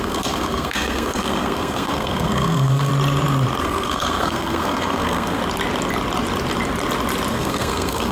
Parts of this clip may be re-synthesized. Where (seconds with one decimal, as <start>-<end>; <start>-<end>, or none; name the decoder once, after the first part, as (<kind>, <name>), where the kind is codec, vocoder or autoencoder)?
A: 0.0-2.9 (codec, SNAC); 3.6-5.4; 7.3-8.1

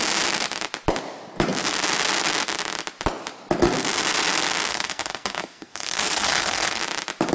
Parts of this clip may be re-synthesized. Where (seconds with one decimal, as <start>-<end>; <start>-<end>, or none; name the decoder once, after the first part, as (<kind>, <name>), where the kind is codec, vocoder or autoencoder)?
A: 4.7-6.8 (codec, SNAC)

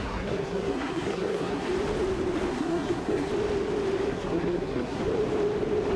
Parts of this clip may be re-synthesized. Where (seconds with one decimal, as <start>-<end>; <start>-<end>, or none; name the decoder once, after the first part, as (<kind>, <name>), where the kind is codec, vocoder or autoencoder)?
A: 0.0-1.7 (codec, SNAC); 2.5-3.3; 4.1-5.0

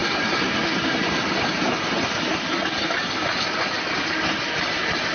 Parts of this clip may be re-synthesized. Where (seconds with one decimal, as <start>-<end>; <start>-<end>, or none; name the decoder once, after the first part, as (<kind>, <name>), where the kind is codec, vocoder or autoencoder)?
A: none

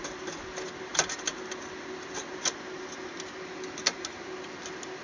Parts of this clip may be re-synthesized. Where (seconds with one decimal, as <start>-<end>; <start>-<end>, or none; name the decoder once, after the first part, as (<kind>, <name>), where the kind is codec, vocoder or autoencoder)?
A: none

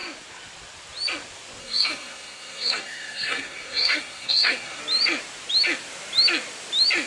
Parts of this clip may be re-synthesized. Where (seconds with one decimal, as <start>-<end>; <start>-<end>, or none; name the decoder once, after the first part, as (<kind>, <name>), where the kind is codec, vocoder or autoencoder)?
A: 1.6-4.8 (codec, SNAC)

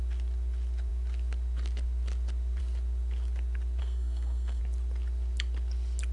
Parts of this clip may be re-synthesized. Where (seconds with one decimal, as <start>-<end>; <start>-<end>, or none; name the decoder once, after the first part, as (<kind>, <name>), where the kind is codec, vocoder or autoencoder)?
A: 3.8-4.6 (codec, SNAC)